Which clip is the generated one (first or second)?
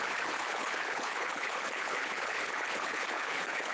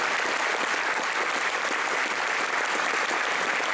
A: first